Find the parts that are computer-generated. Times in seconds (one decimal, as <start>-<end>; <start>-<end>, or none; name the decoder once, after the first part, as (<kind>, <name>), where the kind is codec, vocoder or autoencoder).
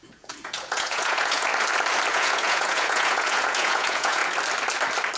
0.0-1.5 (vocoder, Vocos); 2.1-4.2